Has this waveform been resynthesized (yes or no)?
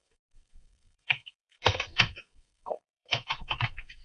yes